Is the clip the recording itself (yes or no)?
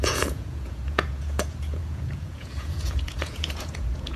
no